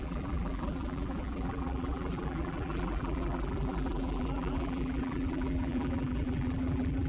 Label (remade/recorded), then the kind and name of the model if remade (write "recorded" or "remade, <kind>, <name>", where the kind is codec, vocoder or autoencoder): remade, vocoder, BigVGAN v2